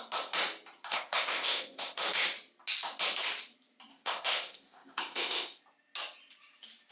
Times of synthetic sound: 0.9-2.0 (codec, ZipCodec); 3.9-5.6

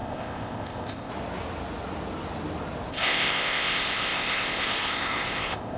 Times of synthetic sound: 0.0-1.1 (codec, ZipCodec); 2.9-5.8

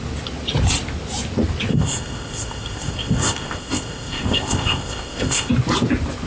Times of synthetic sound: 1.7-5.5 (codec, ZipCodec)

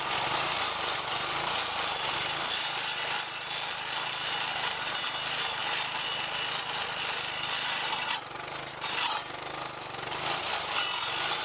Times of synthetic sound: none

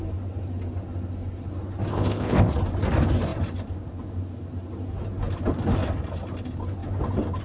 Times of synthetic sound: 1.9-2.5 (codec, ZipCodec)

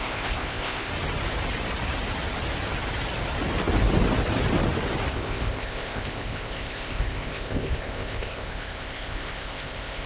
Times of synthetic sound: 0.0-0.9 (codec, ZipCodec); 5.1-10.1